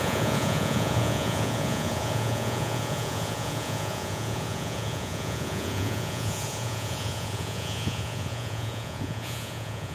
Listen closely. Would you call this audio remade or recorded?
remade